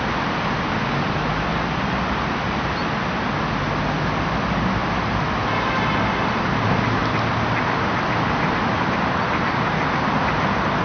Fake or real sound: real